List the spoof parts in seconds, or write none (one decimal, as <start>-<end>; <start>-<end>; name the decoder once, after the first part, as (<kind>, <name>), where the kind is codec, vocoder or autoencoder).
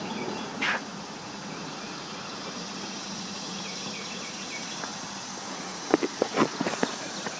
0.0-4.9 (vocoder, Vocos); 5.5-7.4